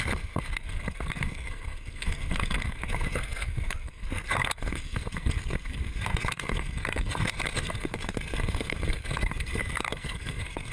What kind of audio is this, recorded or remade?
remade